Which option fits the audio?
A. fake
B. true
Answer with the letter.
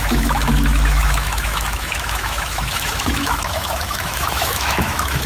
A